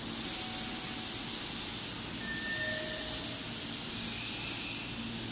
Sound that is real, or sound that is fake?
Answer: real